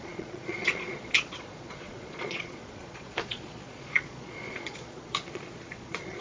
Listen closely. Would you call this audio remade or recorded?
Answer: remade